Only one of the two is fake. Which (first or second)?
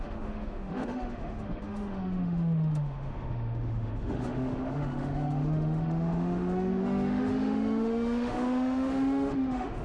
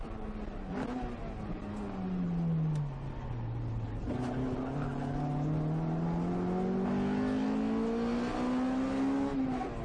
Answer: first